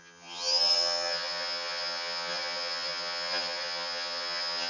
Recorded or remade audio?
remade